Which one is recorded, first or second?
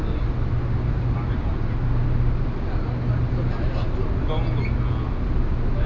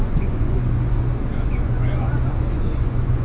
first